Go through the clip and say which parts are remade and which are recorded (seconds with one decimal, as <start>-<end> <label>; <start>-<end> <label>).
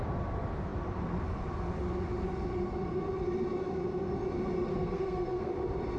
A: 0.0-4.7 recorded; 4.7-5.5 remade; 5.5-6.0 recorded